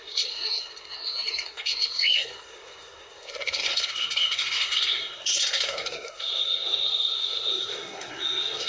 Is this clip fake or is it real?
fake